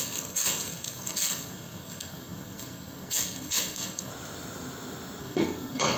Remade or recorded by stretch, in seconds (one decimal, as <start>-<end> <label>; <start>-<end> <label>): 0.0-4.1 remade; 4.1-5.2 recorded; 5.2-6.0 remade